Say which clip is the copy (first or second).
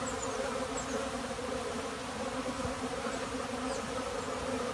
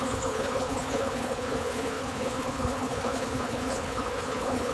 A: second